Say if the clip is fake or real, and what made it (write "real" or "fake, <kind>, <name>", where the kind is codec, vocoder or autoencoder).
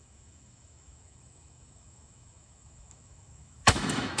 fake, autoencoder, DAC-VAE